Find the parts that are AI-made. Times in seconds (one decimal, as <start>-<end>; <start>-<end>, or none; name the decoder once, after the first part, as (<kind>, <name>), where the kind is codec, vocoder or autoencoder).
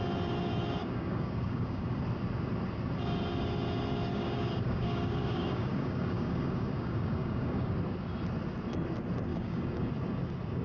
0.8-2.0 (codec, DAC); 4.1-7.7; 9.3-9.9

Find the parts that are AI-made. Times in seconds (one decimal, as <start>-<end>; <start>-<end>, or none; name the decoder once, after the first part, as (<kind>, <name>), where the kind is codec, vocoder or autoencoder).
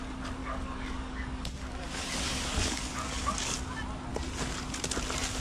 0.4-3.6 (codec, DAC)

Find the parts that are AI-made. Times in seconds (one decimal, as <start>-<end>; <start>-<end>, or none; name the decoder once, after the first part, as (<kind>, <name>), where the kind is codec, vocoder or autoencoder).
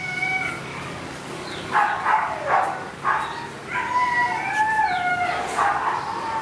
0.7-2.9 (codec, DAC); 5.1-6.0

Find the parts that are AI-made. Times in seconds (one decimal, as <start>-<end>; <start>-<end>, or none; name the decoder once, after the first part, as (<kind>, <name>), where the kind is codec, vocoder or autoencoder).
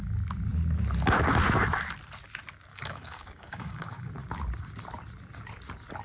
2.7-4.1 (codec, DAC)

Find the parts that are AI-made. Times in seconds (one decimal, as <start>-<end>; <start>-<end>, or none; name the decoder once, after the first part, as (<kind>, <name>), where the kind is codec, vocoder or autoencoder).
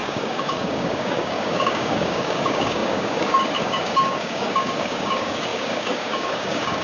0.0-6.8 (codec, DAC)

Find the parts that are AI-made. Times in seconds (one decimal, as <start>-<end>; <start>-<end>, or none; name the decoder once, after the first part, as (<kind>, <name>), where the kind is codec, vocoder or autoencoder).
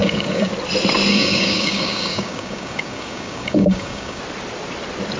0.0-0.5 (codec, DAC); 1.1-4.2